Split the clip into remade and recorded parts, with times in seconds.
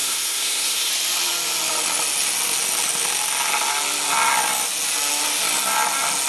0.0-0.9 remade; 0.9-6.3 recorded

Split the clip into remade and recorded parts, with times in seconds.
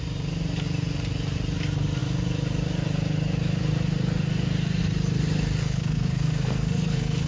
0.0-5.6 recorded; 5.6-7.3 remade